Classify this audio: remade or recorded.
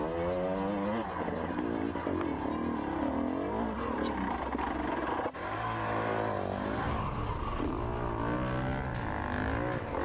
recorded